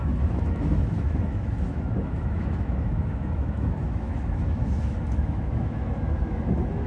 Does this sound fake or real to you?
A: fake